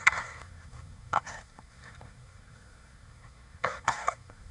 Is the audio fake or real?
fake